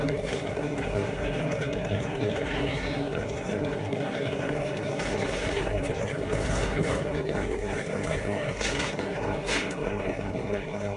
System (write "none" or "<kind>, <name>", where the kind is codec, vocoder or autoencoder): codec, SNAC